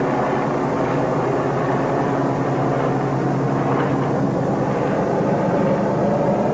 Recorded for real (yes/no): yes